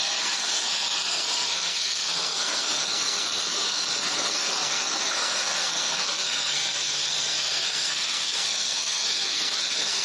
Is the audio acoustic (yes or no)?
no